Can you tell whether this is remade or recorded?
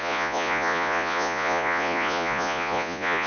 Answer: remade